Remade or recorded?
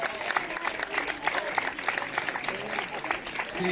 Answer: recorded